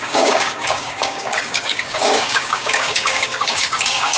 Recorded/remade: remade